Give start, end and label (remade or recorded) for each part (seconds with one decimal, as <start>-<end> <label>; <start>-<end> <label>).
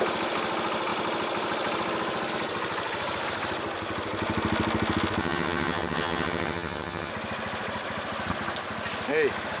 0.0-5.2 recorded; 5.2-7.1 remade; 7.1-9.6 recorded